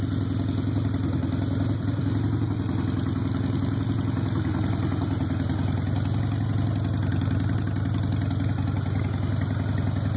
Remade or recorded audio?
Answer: recorded